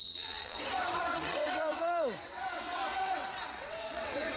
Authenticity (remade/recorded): remade